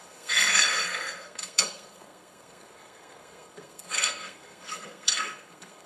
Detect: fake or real fake